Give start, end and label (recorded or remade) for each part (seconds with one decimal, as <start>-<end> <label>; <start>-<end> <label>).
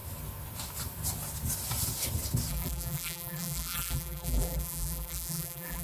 0.0-2.5 recorded; 2.5-5.8 remade